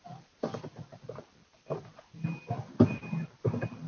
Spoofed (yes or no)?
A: no